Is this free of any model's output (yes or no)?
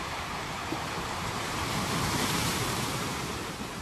no